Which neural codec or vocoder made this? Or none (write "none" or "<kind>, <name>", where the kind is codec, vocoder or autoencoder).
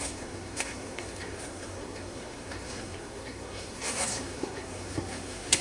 codec, SNAC